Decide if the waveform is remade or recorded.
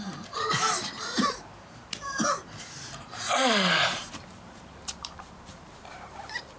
remade